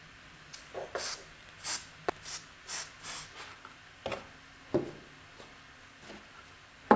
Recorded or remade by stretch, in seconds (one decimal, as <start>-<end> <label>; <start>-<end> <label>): 0.0-7.0 recorded